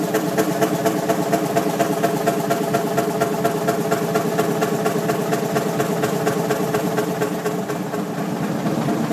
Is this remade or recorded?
recorded